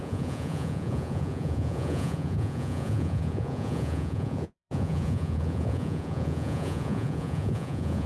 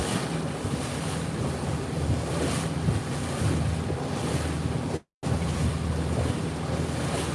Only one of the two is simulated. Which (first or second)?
first